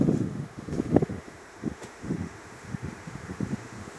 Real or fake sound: fake